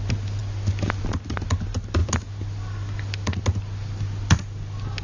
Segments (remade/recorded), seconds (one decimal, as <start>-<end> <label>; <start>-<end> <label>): 0.0-5.0 recorded